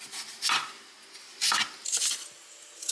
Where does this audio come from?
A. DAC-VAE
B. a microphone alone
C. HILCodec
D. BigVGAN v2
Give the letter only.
B